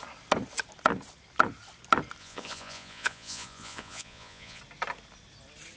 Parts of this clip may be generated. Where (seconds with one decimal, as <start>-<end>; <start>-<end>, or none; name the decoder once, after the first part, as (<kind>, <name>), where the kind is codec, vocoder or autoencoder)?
2.2-4.6 (vocoder, Vocos)